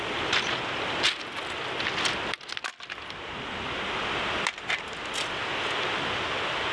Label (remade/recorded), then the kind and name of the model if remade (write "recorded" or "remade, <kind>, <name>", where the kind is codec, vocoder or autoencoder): recorded